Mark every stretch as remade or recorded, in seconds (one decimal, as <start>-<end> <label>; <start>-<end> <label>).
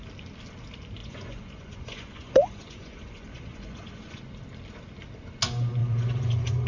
0.0-1.0 recorded; 1.0-4.2 remade; 4.2-5.8 recorded; 5.8-6.7 remade